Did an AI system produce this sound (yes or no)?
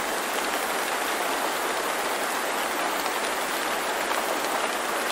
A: no